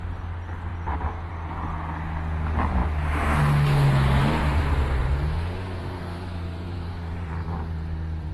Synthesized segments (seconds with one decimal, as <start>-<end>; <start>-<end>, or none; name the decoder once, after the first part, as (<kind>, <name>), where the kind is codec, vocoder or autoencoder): 4.2-8.3 (vocoder, BigVGAN v2)